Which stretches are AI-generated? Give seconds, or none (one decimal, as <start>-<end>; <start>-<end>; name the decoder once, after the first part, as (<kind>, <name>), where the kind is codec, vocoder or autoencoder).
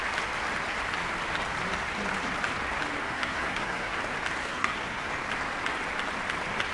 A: 3.0-4.0 (codec, SNAC); 4.4-5.1